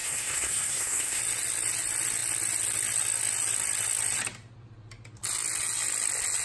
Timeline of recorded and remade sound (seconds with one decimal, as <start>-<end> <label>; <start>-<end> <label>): 0.0-1.2 remade; 1.2-6.4 recorded